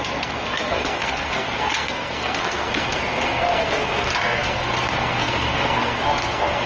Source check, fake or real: fake